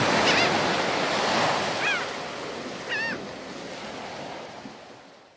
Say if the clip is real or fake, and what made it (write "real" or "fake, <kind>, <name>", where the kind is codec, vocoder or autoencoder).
real